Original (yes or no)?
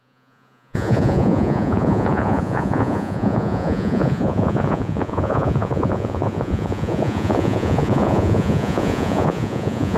no